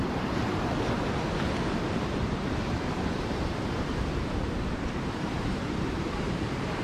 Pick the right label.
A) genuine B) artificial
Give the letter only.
B